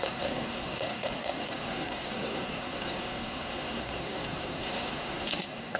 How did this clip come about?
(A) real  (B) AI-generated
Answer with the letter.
B